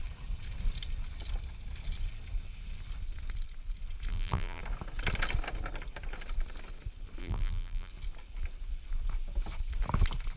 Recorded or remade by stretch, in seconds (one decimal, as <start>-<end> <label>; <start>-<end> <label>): 0.0-4.1 recorded; 4.1-4.6 remade; 4.6-7.2 recorded; 7.2-7.9 remade; 7.9-10.4 recorded